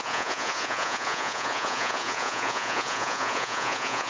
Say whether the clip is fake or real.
fake